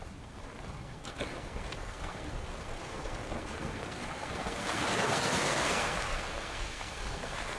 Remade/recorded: remade